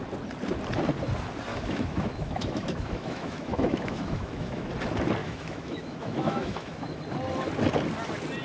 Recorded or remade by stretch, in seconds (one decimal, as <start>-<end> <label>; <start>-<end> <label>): 0.0-1.5 recorded; 1.5-4.7 remade; 4.7-5.2 recorded; 5.2-7.0 remade; 7.0-8.4 recorded

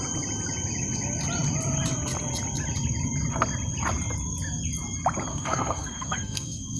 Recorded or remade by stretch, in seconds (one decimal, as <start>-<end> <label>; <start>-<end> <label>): 0.0-5.3 recorded; 5.3-6.8 remade